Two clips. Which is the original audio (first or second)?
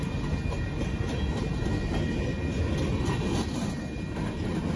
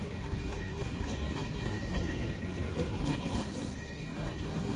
first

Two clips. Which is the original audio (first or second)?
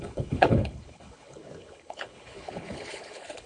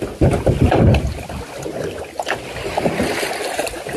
second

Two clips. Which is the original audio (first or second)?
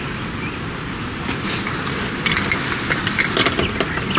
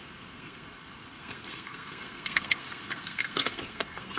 first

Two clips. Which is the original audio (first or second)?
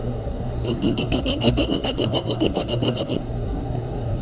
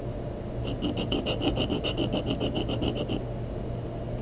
second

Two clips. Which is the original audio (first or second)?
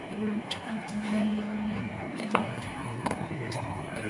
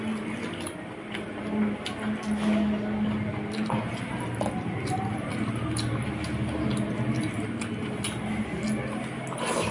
second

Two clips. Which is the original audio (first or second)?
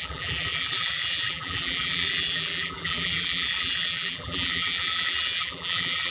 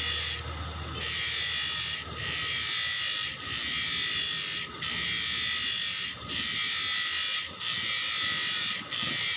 second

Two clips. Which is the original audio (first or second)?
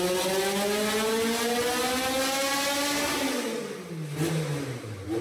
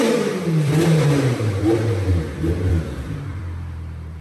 first